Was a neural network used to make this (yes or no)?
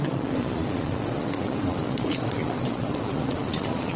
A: yes